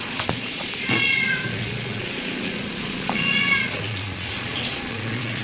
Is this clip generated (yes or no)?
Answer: yes